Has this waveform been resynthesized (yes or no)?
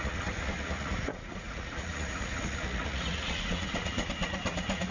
yes